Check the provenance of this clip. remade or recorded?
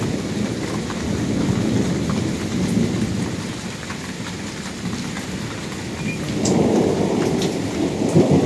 remade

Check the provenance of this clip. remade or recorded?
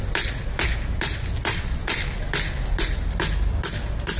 recorded